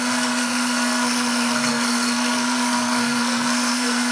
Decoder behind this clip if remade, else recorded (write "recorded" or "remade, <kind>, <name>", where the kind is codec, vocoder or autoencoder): remade, codec, SNAC